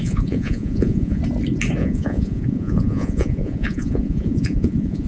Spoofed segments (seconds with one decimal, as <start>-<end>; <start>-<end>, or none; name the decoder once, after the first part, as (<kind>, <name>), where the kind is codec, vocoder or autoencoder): 0.0-1.2 (vocoder, Vocos); 1.8-5.1